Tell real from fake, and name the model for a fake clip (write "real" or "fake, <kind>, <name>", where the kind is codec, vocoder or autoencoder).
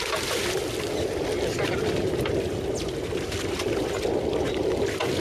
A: real